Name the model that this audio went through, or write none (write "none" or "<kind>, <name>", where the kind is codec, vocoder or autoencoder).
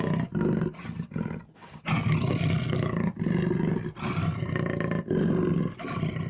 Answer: none